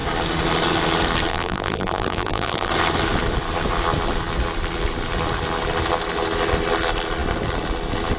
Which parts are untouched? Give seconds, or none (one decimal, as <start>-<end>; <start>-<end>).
0.0-1.3; 2.7-8.2